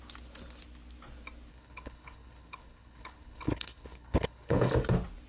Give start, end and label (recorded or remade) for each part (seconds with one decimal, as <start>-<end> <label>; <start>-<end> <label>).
0.0-1.5 recorded; 1.5-4.7 remade; 4.7-5.3 recorded